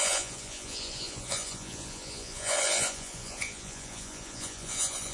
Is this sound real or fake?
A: fake